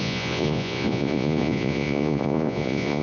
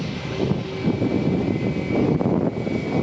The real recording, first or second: second